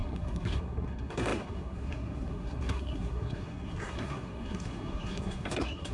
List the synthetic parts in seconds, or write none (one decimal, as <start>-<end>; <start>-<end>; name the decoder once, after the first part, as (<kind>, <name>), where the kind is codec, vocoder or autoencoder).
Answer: 0.0-5.9 (codec, SNAC)